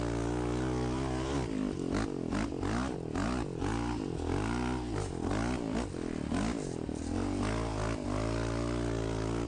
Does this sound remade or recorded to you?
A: recorded